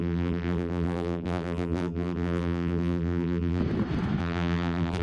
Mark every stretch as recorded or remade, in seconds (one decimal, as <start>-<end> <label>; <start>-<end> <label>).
0.0-3.6 remade; 3.6-4.2 recorded; 4.2-5.0 remade